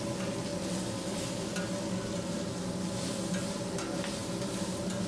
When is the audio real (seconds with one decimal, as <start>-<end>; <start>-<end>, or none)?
0.0-5.1